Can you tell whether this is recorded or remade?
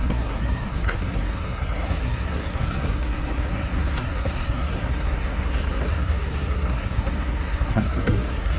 remade